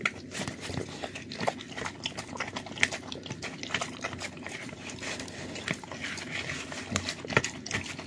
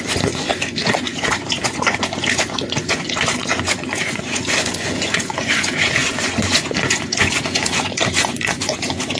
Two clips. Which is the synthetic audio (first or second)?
second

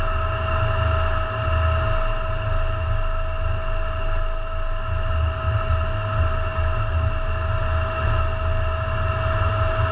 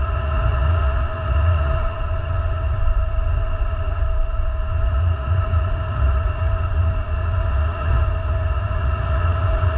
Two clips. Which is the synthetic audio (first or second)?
second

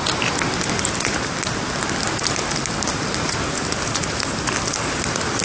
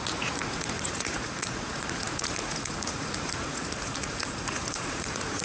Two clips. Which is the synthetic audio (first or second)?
second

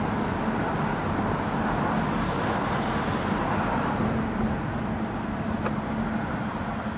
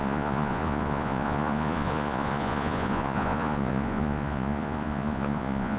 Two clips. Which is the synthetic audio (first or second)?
second